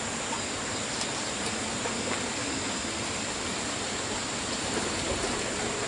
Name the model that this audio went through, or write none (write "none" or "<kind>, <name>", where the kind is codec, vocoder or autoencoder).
vocoder, BigVGAN v2